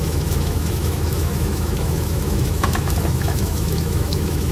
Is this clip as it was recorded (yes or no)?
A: no